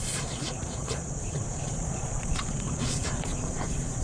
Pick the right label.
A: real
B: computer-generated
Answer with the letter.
B